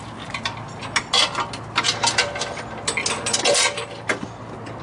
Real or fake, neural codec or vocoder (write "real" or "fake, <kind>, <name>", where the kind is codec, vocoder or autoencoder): real